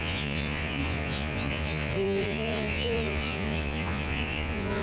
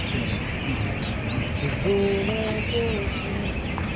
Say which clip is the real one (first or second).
second